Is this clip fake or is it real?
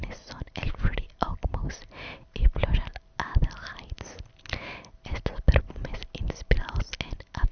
real